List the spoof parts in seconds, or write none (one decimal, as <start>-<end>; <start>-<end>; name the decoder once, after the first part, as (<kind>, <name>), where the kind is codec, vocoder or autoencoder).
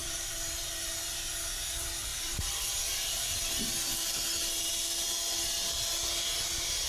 0.0-1.3 (vocoder, BigVGAN v2); 2.1-4.7